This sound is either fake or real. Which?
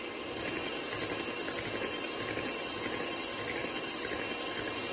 real